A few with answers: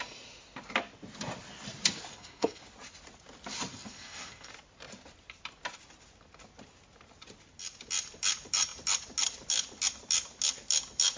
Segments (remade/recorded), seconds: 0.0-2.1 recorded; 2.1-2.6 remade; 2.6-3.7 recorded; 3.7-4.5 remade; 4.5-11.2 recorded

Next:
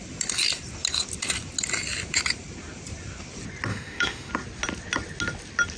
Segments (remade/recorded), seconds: 0.0-3.7 recorded; 3.7-4.3 remade; 4.3-5.8 recorded